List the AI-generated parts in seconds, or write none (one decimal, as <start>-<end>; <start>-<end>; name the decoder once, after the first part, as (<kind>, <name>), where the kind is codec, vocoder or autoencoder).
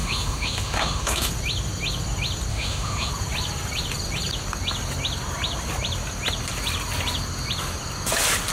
0.0-1.3 (autoencoder, DAC-VAE); 2.5-3.1